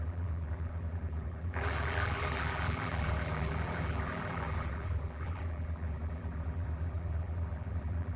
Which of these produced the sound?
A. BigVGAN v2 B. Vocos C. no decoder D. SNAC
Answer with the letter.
A